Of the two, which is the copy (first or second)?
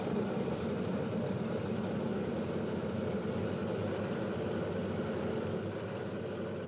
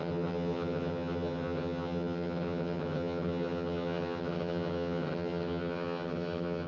second